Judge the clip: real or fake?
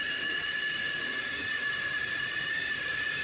fake